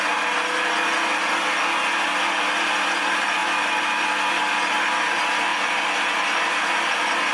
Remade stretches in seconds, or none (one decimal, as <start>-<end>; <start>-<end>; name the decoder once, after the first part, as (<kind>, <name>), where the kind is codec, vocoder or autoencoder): none